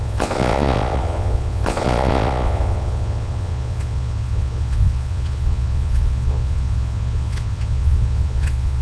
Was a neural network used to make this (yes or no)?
yes